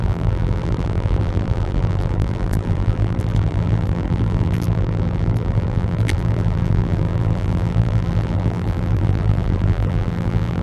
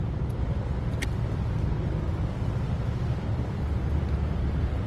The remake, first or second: first